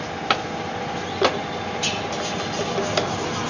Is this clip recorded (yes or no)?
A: yes